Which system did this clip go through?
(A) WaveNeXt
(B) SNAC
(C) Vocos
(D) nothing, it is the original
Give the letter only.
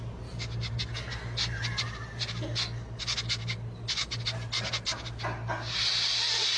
D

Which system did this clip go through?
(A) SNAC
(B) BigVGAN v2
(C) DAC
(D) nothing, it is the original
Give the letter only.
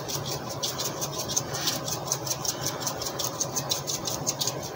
D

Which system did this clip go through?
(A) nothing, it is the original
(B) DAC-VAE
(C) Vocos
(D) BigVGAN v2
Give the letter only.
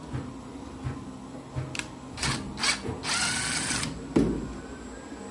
A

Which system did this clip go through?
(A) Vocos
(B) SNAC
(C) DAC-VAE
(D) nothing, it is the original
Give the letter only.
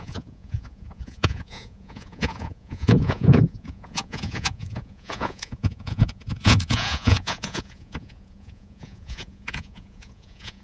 A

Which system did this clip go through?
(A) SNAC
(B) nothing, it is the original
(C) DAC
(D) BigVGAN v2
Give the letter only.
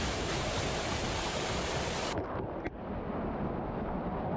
B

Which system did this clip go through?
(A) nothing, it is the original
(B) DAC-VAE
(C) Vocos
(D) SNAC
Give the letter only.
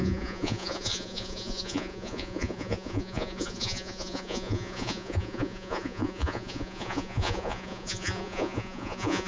C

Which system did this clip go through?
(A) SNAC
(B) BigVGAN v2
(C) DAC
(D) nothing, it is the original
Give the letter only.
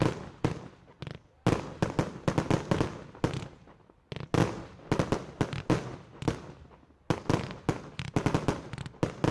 D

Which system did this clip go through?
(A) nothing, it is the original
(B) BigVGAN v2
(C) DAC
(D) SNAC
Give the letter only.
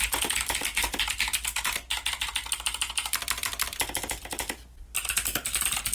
A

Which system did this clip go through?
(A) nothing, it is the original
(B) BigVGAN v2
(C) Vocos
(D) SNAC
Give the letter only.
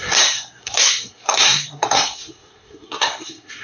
D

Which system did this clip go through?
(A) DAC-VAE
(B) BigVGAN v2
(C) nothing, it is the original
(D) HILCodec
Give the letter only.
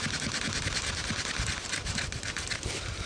C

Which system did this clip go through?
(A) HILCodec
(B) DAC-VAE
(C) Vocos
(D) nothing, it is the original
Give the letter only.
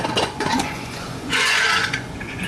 C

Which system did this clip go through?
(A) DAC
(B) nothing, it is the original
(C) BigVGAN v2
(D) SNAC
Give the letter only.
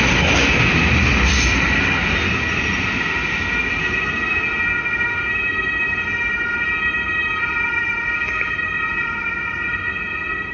B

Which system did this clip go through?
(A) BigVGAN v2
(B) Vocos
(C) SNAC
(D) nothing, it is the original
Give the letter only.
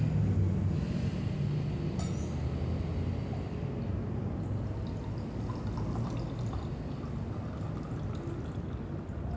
D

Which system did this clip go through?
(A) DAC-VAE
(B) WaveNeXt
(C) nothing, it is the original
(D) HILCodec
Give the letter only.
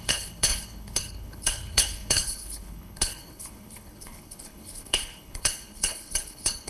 D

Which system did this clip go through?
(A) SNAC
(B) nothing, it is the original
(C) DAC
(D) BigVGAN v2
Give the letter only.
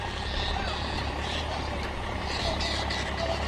B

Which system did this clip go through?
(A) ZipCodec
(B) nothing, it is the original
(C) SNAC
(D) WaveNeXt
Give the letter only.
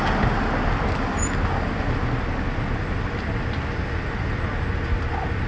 B